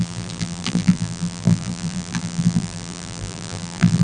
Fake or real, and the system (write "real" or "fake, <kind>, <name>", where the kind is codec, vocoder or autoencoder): fake, vocoder, BigVGAN v2